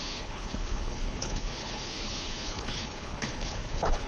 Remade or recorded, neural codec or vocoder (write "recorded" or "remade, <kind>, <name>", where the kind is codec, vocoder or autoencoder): remade, codec, HILCodec